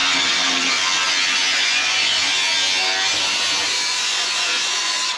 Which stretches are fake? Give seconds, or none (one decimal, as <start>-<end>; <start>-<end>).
1.6-2.2; 3.9-5.2